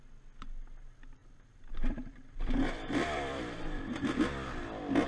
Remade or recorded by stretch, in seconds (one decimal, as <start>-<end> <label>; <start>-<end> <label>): 0.0-1.2 recorded; 1.2-3.9 remade; 3.9-5.1 recorded